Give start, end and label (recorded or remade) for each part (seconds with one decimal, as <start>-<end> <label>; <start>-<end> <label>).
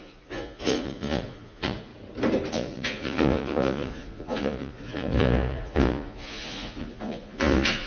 0.0-1.9 remade; 1.9-2.5 recorded; 2.5-7.9 remade